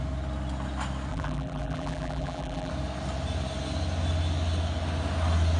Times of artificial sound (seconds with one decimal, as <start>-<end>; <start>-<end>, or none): 1.1-2.7